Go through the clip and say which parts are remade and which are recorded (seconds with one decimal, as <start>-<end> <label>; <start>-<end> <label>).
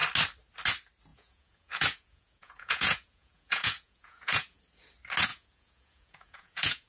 0.0-1.1 recorded; 1.1-4.6 remade; 4.6-5.3 recorded; 5.3-6.9 remade